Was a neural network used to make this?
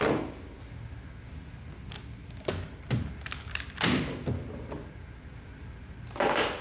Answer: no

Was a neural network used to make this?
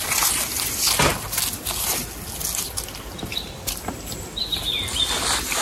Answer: no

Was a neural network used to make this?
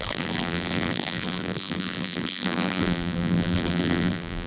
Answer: yes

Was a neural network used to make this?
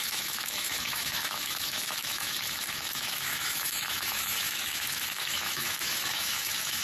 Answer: yes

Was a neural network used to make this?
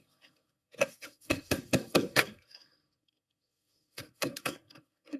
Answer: yes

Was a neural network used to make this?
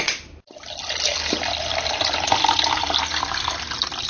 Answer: no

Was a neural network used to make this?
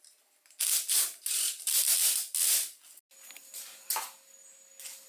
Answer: no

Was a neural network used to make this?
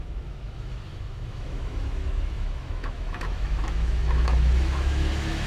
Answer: yes